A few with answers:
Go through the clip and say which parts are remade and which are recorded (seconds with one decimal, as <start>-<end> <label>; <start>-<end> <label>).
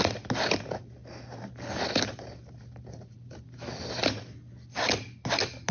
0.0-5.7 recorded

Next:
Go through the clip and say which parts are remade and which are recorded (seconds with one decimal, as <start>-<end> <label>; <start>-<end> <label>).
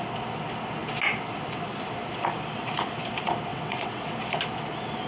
0.0-3.5 recorded; 3.5-4.1 remade; 4.1-5.1 recorded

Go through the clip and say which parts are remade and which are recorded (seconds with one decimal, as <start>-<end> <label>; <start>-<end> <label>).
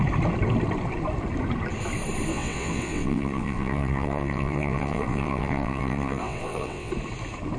0.0-2.3 recorded; 2.3-6.9 remade; 6.9-7.6 recorded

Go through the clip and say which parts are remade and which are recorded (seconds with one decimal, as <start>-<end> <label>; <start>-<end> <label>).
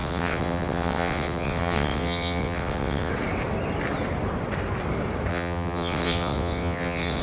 0.0-3.1 remade; 3.1-5.3 recorded; 5.3-7.2 remade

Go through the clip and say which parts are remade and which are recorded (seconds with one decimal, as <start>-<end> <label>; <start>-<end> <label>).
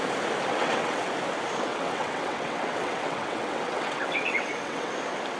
0.0-0.5 recorded; 0.5-1.1 remade; 1.1-1.7 recorded; 1.7-4.9 remade; 4.9-5.4 recorded